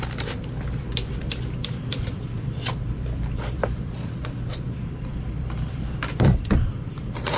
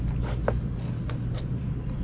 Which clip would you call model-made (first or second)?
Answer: first